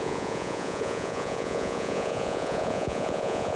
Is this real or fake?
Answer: fake